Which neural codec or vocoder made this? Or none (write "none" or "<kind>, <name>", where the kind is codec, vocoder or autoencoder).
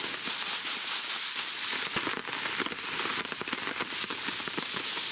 none